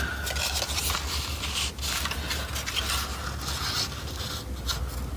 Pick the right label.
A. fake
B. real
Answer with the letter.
B